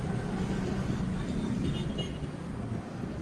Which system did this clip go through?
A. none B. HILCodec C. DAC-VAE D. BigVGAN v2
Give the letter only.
A